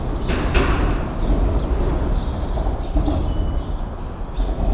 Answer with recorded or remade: recorded